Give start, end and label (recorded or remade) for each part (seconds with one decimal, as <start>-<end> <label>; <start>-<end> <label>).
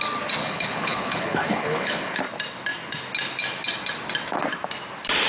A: 0.0-0.4 recorded; 0.4-2.2 remade; 2.2-5.3 recorded